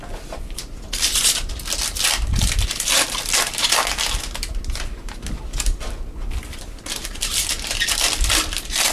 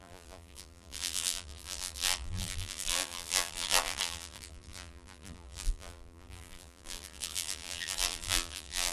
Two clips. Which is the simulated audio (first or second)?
second